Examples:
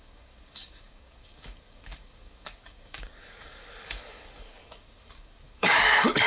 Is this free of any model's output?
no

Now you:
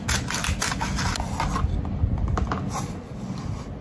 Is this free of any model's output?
yes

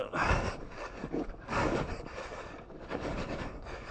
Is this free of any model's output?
no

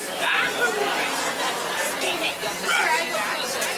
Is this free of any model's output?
yes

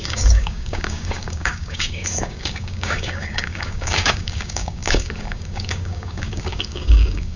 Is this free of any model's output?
no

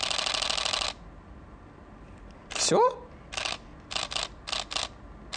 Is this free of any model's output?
yes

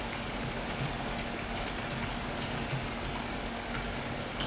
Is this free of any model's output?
no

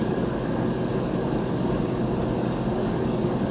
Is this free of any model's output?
no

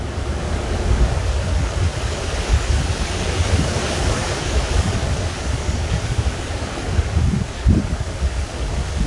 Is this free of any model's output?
no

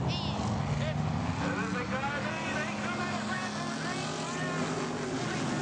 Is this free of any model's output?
yes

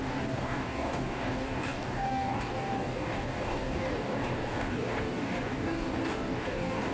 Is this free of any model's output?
no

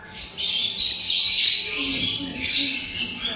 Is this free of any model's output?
yes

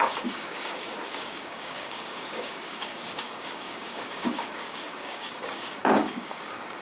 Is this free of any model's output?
no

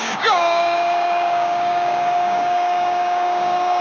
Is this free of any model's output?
no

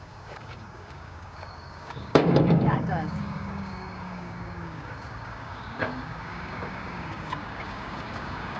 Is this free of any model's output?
no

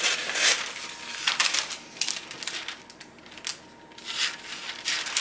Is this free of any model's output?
yes